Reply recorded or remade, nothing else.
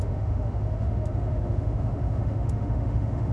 remade